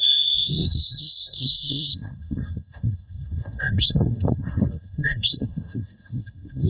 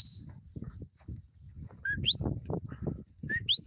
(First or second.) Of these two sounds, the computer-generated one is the first